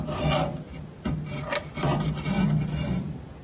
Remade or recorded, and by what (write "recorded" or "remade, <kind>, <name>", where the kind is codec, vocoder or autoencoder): recorded